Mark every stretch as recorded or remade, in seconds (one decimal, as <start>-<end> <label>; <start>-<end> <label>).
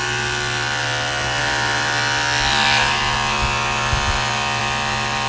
0.0-5.3 recorded